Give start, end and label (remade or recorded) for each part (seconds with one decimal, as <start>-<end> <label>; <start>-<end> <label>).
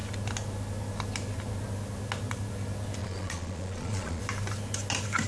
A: 0.0-3.0 recorded; 3.0-4.2 remade; 4.2-5.3 recorded